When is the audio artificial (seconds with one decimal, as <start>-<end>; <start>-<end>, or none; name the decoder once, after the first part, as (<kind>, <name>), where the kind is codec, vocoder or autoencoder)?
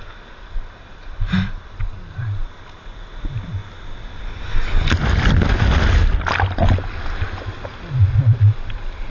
none